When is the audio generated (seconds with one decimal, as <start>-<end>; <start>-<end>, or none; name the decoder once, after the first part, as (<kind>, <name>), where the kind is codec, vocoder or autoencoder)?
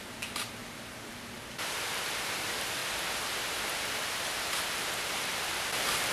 0.0-0.6 (vocoder, BigVGAN v2); 1.5-2.8; 4.2-6.1